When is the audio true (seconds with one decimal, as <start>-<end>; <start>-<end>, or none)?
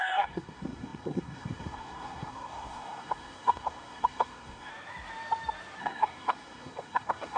4.7-5.8